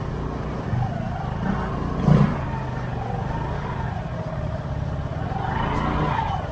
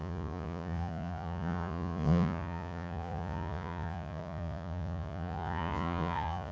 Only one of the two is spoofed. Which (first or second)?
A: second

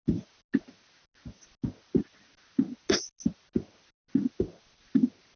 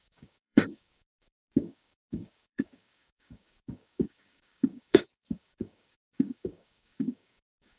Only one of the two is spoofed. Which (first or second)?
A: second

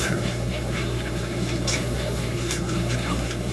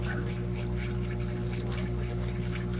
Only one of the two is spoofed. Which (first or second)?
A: first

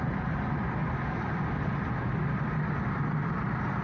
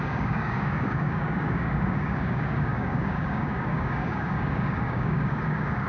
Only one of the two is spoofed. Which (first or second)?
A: second